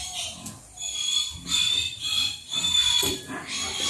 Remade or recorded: recorded